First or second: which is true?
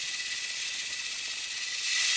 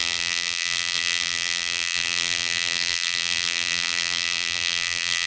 first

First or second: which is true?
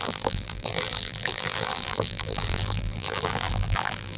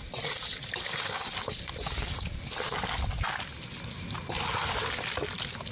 second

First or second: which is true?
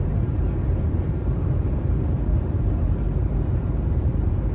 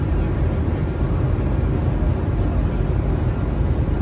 second